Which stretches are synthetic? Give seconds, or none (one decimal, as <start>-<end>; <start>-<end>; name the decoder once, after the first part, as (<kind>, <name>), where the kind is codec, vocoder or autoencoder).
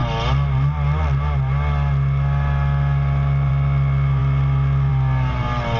none